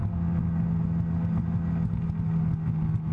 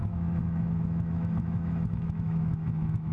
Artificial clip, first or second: second